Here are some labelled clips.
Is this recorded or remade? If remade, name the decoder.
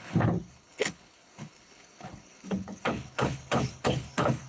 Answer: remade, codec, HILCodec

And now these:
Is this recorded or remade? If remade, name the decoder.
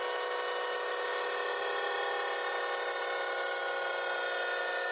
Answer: recorded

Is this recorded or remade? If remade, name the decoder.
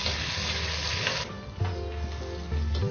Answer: recorded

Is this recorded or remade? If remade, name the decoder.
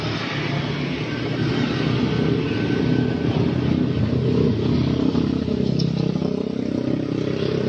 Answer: recorded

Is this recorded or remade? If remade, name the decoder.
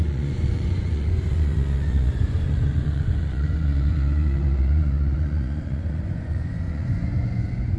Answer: remade, vocoder, Vocos